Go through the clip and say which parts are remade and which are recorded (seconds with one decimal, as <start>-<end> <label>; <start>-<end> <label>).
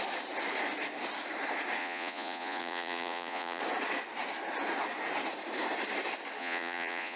0.0-1.8 recorded; 1.8-3.6 remade; 3.6-6.4 recorded; 6.4-7.2 remade